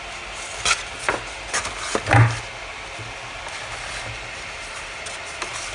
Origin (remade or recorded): recorded